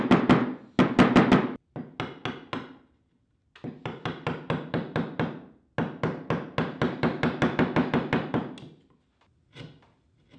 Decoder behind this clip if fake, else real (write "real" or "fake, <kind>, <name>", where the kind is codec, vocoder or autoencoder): real